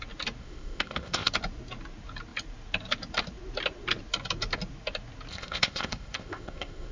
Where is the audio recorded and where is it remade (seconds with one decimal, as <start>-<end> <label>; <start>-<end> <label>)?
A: 0.0-0.4 recorded; 0.4-1.3 remade; 1.3-5.3 recorded; 5.3-6.9 remade